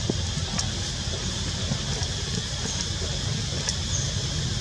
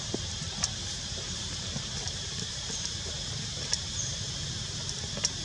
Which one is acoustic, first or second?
first